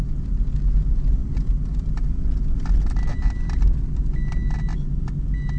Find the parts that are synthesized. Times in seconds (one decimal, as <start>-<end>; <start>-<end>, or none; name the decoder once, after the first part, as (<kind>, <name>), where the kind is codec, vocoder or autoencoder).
none

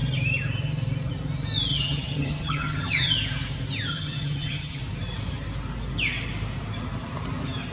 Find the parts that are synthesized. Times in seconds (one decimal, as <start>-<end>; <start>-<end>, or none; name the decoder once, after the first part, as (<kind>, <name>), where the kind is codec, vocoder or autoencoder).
1.7-3.1 (vocoder, HiFi-GAN); 3.9-4.8

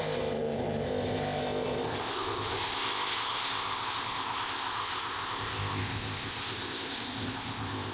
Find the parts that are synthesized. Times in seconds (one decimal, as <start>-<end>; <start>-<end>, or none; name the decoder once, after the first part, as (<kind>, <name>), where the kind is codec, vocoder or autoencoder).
0.0-7.9 (codec, ZipCodec)

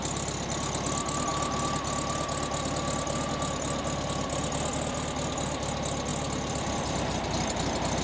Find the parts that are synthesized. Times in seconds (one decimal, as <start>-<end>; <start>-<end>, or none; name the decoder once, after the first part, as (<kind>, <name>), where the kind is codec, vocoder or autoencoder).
none

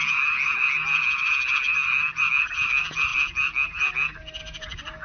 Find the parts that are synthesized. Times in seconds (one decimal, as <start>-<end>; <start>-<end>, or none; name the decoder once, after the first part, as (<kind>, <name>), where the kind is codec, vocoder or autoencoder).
none

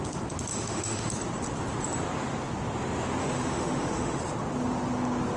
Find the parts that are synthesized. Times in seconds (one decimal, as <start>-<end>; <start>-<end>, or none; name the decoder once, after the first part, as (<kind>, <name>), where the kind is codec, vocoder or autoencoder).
0.5-1.1 (autoencoder, DAC-VAE); 3.2-4.2